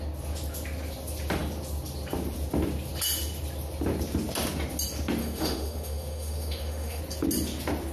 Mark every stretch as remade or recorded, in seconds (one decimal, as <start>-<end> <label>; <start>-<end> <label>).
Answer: 0.0-5.2 recorded; 5.2-7.0 remade; 7.0-7.9 recorded